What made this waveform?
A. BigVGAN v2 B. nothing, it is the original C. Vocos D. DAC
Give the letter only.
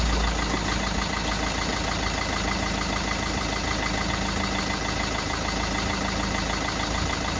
B